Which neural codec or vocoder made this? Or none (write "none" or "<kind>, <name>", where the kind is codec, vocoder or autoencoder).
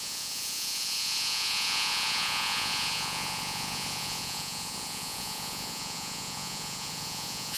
vocoder, Vocos